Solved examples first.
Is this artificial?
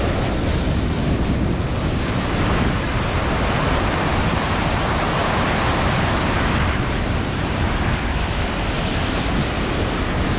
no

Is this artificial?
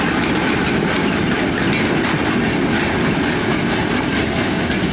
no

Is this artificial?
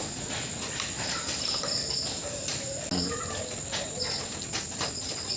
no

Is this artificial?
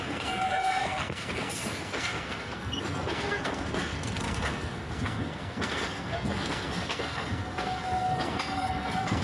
yes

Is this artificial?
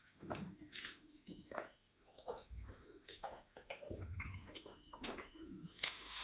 yes